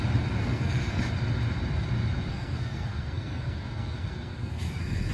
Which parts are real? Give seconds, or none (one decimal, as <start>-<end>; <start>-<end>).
0.0-0.4; 1.0-2.3